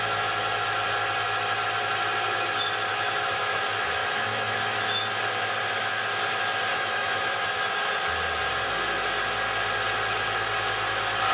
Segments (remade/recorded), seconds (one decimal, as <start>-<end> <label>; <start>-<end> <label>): 0.0-2.9 recorded; 2.9-3.6 remade; 3.6-4.0 recorded; 4.0-5.0 remade; 5.0-6.7 recorded; 6.7-7.9 remade; 7.9-11.3 recorded